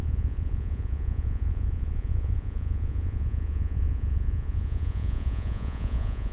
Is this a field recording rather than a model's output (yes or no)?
no